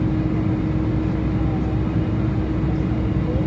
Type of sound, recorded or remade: recorded